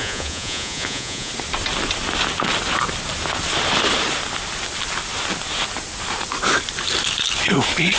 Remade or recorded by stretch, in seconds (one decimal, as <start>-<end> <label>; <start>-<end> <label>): 0.0-1.3 remade; 1.3-8.0 recorded